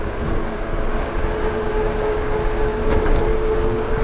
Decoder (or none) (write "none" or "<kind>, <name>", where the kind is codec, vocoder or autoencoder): codec, DAC